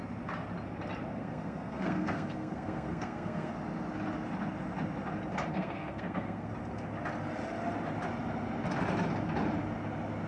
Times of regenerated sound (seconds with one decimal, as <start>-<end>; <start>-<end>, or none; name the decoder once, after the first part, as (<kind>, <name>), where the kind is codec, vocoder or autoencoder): 1.2-3.5 (codec, SNAC); 5.5-6.5